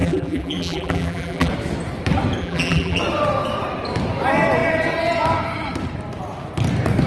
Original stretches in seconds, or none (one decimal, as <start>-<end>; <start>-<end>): 1.5-2.4; 3.0-7.1